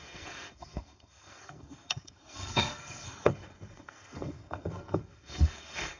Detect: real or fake fake